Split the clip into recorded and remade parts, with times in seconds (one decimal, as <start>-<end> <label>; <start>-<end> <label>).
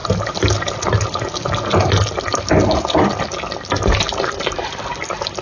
0.0-5.4 recorded